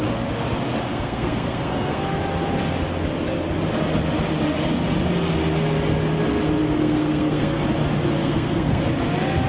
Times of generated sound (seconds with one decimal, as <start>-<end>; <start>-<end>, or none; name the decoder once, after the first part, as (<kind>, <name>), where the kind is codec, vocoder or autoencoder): 0.9-2.2 (codec, SNAC); 6.8-7.6; 8.2-8.8